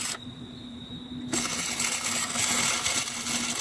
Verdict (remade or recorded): recorded